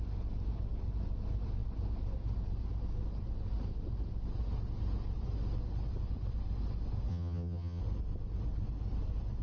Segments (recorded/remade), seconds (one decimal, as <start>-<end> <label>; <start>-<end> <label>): 0.0-7.1 recorded; 7.1-7.8 remade; 7.8-9.4 recorded